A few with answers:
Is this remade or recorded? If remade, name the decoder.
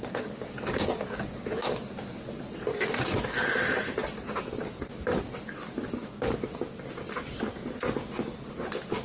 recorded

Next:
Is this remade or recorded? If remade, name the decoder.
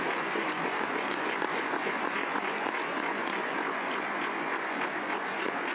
remade, vocoder, Vocos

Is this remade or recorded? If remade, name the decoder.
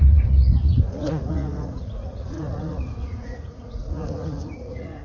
remade, vocoder, Vocos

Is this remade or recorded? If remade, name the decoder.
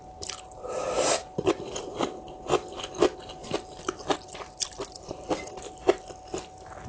recorded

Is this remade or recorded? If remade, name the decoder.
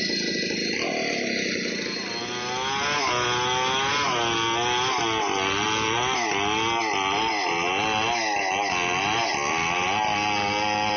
recorded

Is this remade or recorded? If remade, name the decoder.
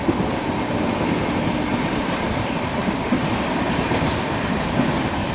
recorded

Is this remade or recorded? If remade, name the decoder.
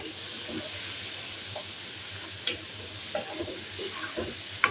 recorded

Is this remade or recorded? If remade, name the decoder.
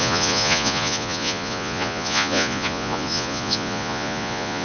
remade, vocoder, Vocos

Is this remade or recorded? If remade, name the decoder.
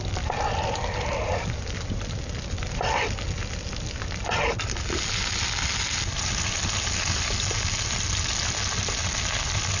recorded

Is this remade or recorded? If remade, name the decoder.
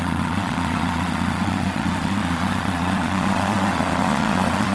remade, vocoder, Vocos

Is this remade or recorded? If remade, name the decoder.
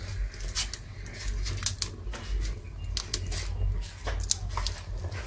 recorded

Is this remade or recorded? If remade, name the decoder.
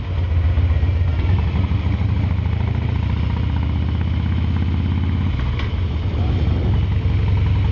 recorded